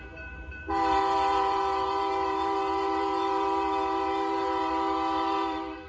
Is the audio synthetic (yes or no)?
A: yes